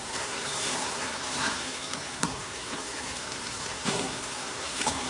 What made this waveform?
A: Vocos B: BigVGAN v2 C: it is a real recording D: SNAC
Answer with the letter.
D